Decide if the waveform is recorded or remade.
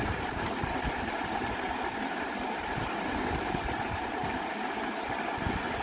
remade